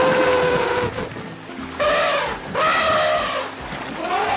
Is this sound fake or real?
real